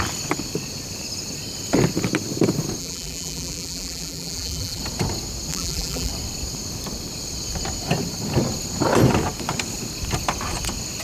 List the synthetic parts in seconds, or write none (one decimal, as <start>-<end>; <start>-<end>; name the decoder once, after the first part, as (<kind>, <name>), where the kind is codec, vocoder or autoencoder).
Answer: 2.8-4.8 (vocoder, BigVGAN v2); 5.5-6.1